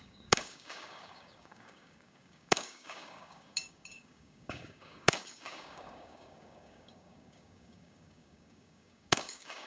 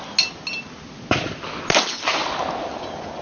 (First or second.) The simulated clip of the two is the first